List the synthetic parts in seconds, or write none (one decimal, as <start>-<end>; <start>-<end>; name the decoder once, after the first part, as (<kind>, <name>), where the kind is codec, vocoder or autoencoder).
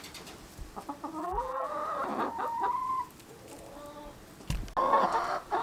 1.2-1.7 (vocoder, BigVGAN v2)